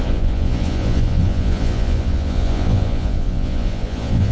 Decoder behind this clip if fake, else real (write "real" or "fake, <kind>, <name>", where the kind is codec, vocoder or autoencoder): fake, vocoder, Vocos